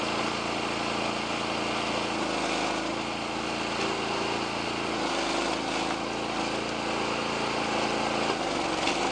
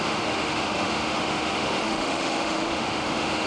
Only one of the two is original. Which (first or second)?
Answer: first